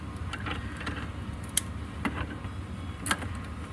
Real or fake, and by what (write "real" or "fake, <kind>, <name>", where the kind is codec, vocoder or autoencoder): real